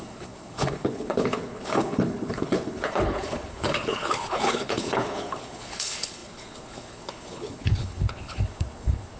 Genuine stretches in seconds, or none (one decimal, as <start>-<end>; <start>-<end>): none